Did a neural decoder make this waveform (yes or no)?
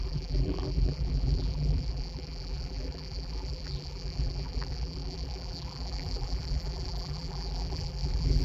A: yes